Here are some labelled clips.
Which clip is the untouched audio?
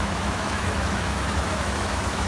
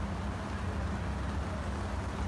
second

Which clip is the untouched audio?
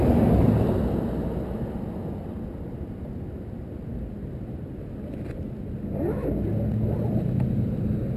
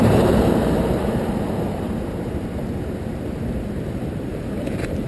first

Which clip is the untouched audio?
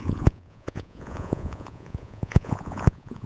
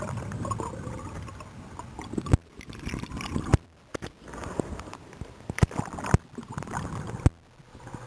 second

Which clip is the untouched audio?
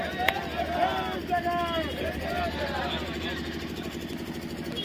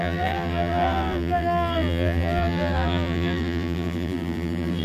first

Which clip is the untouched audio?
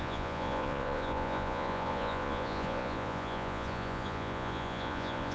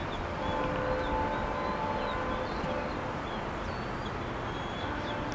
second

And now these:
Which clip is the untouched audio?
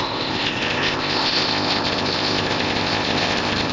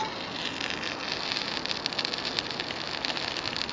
second